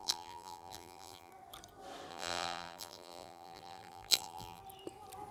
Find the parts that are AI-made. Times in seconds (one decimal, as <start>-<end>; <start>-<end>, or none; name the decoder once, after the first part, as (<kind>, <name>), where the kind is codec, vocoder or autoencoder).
0.0-1.3 (vocoder, BigVGAN v2); 2.1-4.6